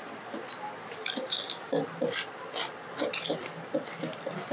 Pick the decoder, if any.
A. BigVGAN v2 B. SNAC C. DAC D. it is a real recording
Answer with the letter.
D